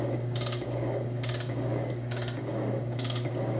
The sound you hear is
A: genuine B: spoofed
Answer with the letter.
B